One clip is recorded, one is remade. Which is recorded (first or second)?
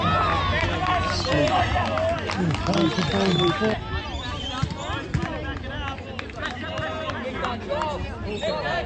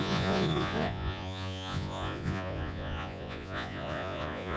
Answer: first